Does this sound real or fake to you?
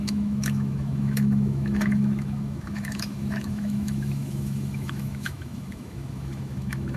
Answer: fake